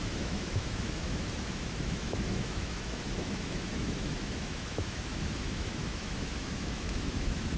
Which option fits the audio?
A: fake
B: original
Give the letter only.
A